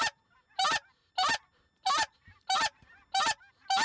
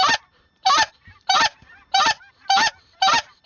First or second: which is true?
first